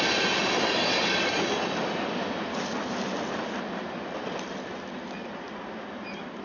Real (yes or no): yes